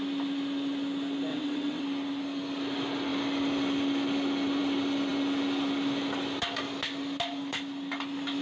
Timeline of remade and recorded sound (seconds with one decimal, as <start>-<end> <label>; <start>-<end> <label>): 0.0-1.3 recorded; 1.3-1.8 remade; 1.8-8.4 recorded